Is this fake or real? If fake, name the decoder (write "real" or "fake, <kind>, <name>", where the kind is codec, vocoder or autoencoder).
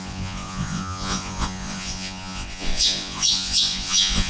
fake, vocoder, Vocos